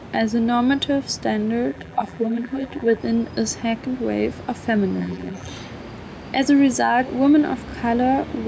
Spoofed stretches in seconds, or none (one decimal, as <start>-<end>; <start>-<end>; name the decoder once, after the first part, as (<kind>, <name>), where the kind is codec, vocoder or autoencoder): 1.7-3.0 (vocoder, BigVGAN v2); 5.0-5.5